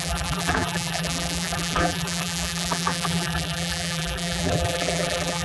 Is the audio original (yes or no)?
no